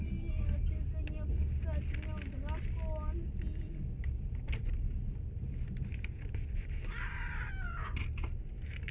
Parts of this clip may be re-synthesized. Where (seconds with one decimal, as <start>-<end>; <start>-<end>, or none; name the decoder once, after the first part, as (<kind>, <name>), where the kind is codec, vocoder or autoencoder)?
none